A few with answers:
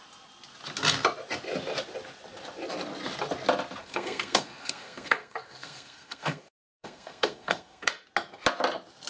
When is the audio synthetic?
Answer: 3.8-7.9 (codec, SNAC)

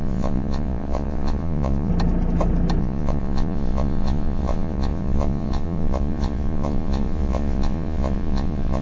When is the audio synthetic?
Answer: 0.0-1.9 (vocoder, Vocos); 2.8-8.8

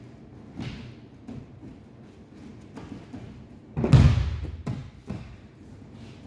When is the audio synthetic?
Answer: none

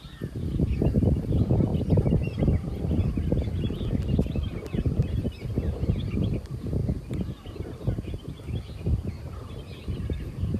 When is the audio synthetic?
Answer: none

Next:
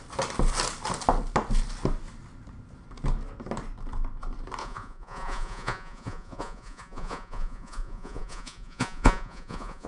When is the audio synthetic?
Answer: 4.6-9.9 (vocoder, Vocos)

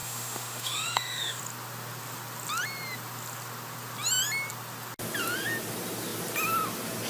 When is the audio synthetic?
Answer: 0.0-1.4 (autoencoder, DAC-VAE)